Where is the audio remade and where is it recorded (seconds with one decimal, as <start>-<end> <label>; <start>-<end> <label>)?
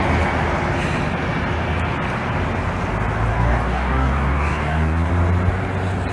0.0-3.3 recorded; 3.3-5.1 remade; 5.1-6.1 recorded